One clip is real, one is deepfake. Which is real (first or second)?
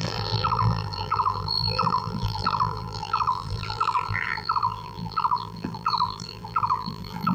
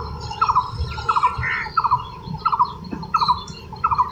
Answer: second